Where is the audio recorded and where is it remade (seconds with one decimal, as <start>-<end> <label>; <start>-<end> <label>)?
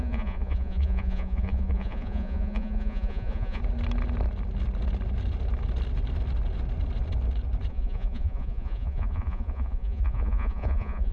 0.0-3.6 remade; 3.6-7.7 recorded; 7.7-11.1 remade